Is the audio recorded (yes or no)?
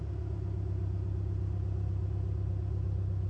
yes